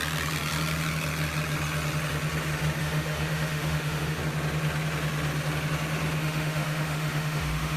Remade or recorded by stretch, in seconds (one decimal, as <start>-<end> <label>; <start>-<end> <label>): 0.0-2.8 recorded; 2.8-4.2 remade; 4.2-6.2 recorded; 6.2-7.8 remade